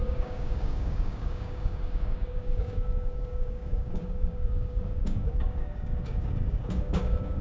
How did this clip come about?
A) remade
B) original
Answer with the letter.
A